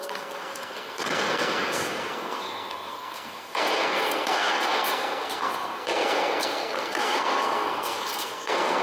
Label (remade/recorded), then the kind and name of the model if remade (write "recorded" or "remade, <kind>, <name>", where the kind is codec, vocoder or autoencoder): remade, codec, SNAC